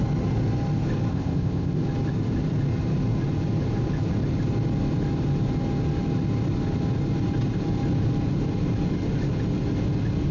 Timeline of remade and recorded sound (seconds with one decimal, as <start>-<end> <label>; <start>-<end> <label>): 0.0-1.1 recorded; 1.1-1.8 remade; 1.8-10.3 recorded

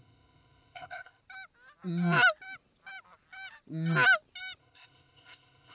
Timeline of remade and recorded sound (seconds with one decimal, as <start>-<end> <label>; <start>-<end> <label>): 0.0-1.2 remade; 1.2-4.6 recorded; 4.6-5.7 remade

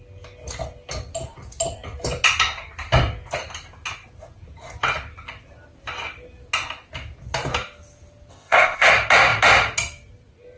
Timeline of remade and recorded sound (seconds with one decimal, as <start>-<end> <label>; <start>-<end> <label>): 0.0-8.3 recorded; 8.3-8.9 remade; 8.9-10.6 recorded

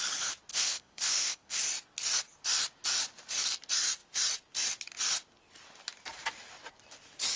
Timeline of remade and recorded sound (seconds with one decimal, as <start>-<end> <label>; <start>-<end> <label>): 0.0-0.5 recorded; 0.5-1.6 remade; 1.6-7.4 recorded